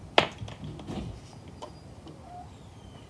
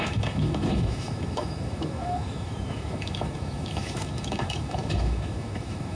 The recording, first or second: first